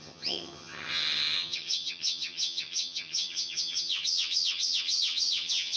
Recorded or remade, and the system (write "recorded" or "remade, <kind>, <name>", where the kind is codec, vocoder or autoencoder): remade, vocoder, HiFi-GAN